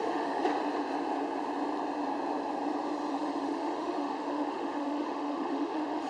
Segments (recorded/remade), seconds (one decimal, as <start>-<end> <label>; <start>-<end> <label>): 0.0-0.5 remade; 0.5-3.1 recorded; 3.1-6.1 remade